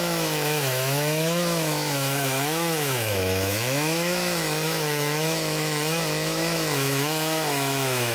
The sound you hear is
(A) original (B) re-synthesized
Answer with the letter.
B